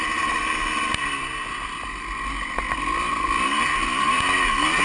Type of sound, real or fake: real